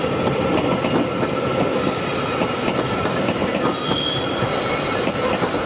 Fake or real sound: real